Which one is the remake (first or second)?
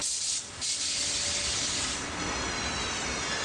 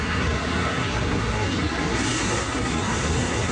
second